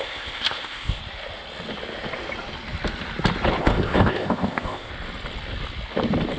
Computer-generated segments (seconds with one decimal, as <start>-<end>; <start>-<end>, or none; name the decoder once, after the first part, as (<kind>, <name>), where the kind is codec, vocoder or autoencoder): 0.0-1.0 (codec, ZipCodec); 3.6-4.9